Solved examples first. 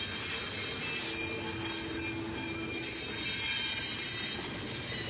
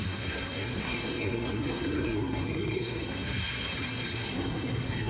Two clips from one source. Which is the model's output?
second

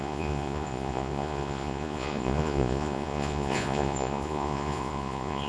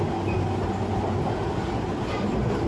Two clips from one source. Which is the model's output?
first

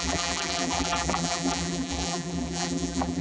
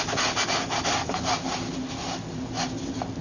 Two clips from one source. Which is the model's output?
first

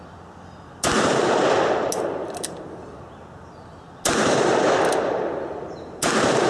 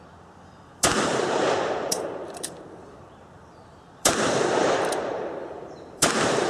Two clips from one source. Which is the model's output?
second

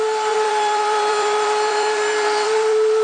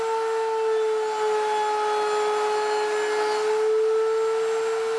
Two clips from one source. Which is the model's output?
first